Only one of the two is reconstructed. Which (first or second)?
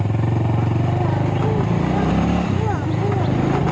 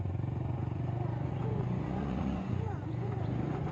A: second